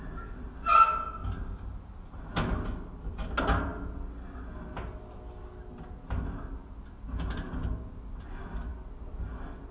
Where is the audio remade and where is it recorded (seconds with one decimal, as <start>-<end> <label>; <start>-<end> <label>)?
0.0-9.7 recorded